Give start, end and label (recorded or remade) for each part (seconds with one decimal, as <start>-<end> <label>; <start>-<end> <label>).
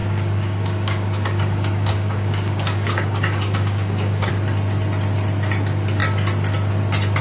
0.0-4.3 remade; 4.3-7.2 recorded